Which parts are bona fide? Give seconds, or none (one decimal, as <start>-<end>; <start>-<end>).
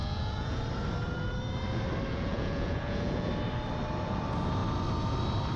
0.6-2.1; 3.3-5.6